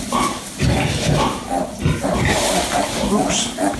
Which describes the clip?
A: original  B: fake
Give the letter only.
A